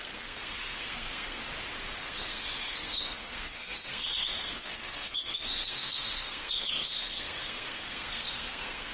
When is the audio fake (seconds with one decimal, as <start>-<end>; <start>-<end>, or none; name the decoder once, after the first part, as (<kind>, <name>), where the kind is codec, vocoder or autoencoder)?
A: 0.0-1.4 (codec, SNAC); 2.0-8.9